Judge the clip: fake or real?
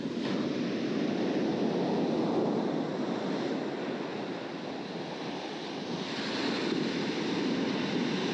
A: real